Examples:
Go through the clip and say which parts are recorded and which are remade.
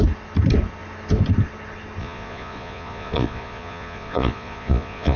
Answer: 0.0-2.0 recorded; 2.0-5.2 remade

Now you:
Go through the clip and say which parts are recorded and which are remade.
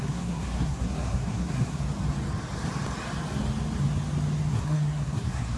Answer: 0.0-1.8 remade; 1.8-4.5 recorded; 4.5-5.6 remade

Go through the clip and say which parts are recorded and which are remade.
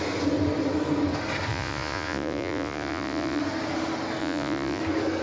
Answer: 0.0-1.5 recorded; 1.5-3.4 remade; 3.4-4.2 recorded; 4.2-4.8 remade; 4.8-5.2 recorded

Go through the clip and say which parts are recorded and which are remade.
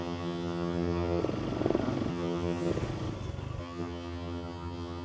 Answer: 0.0-1.2 remade; 1.2-2.1 recorded; 2.1-2.7 remade; 2.7-3.6 recorded; 3.6-5.0 remade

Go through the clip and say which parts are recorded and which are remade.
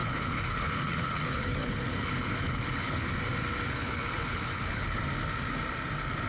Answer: 0.0-3.1 remade; 3.1-3.7 recorded; 3.7-5.0 remade; 5.0-6.3 recorded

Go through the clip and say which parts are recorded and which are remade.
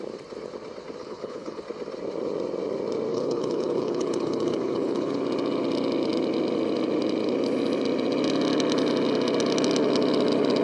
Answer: 0.0-1.0 recorded; 1.0-1.6 remade; 1.6-3.1 recorded; 3.1-5.2 remade; 5.2-10.6 recorded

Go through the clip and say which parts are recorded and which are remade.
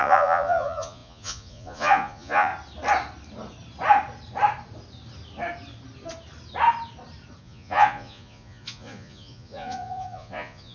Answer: 0.0-2.5 remade; 2.5-7.4 recorded; 7.4-10.7 remade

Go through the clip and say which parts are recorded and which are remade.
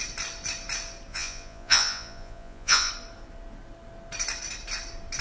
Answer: 0.0-1.1 recorded; 1.1-2.9 remade; 2.9-5.2 recorded